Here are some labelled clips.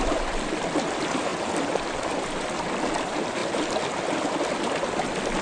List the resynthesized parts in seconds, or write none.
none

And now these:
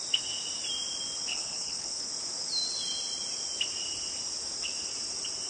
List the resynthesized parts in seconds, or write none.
1.3-2.1

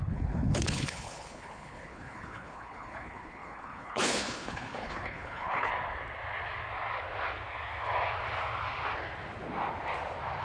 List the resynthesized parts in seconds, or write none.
0.0-5.7

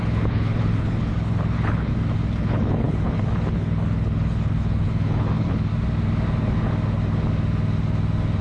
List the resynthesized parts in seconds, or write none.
0.0-1.9; 2.4-5.7